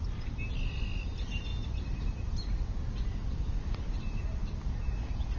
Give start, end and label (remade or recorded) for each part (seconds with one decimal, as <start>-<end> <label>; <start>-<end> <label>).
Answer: 0.0-5.4 recorded